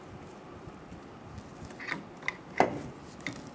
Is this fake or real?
real